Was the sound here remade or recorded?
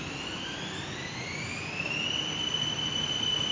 recorded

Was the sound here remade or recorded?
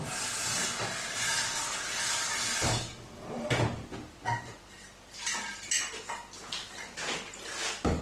recorded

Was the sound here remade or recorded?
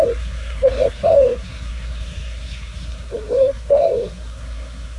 remade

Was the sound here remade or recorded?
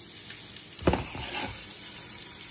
recorded